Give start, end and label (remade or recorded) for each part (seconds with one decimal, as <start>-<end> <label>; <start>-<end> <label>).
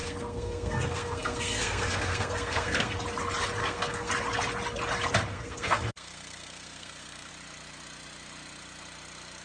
0.0-3.0 remade; 3.0-3.6 recorded; 3.6-4.1 remade; 4.1-5.3 recorded; 5.3-7.3 remade; 7.3-9.4 recorded